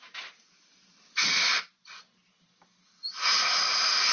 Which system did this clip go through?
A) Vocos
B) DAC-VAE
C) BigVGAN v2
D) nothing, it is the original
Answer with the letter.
D